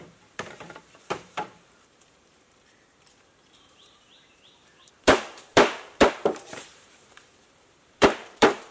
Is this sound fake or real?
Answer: fake